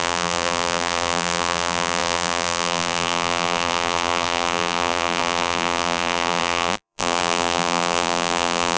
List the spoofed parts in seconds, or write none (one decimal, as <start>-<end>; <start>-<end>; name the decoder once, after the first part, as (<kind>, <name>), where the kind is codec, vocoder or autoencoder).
0.0-8.8 (vocoder, BigVGAN v2)